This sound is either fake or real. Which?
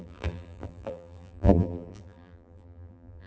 fake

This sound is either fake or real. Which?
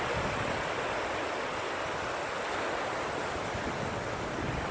real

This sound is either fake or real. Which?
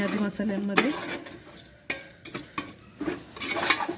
real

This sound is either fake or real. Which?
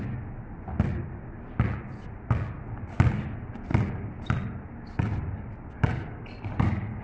real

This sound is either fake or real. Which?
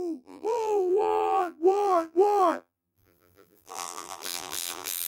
fake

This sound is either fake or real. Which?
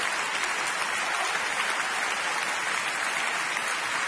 real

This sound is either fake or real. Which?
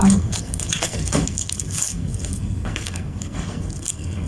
fake